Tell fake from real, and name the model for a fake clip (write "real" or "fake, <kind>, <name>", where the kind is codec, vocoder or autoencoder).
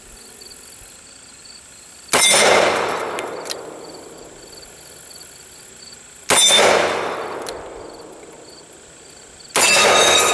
real